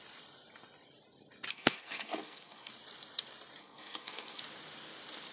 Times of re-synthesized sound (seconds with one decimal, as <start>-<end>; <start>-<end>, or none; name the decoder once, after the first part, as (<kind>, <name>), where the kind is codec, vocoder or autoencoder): 1.5-2.7 (codec, SNAC); 3.6-4.4